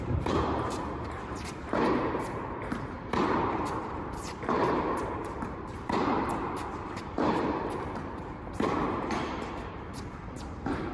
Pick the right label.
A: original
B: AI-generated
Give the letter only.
B